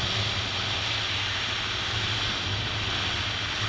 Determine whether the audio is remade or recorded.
recorded